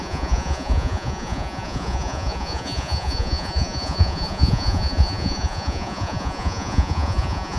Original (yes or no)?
no